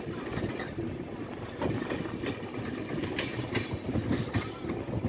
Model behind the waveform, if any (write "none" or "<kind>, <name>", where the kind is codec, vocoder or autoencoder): none